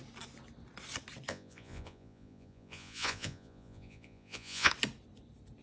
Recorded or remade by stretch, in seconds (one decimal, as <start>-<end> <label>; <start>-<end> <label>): 0.0-1.3 recorded; 1.3-4.7 remade; 4.7-5.6 recorded